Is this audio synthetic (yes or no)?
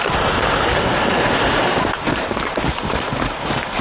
yes